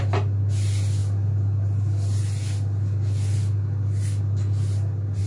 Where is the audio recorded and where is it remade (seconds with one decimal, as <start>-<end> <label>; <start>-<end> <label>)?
0.0-5.3 recorded